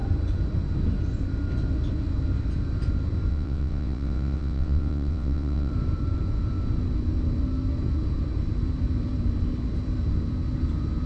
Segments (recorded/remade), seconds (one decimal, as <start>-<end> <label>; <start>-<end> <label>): 0.0-3.3 recorded; 3.3-5.7 remade; 5.7-11.1 recorded